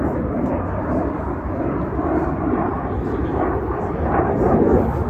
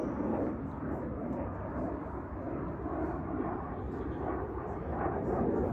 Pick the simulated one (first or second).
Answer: first